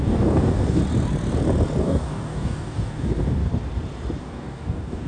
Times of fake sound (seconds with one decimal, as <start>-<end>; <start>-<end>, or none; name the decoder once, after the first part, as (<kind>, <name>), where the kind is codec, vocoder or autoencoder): 0.0-0.8 (codec, DAC); 1.8-3.5; 4.2-5.1